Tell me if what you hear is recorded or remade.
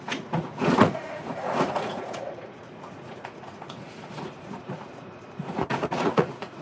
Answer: remade